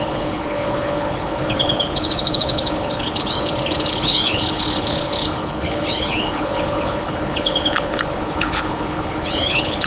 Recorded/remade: remade